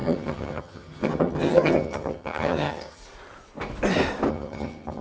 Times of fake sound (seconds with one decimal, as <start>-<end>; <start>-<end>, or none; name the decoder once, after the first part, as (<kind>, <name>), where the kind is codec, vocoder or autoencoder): 0.0-3.0 (vocoder, HiFi-GAN); 4.3-5.0